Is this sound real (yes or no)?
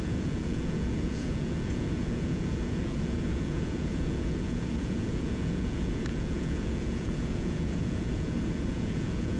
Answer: no